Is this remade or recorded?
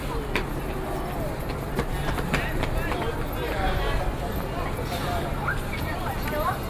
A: recorded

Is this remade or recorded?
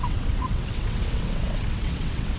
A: remade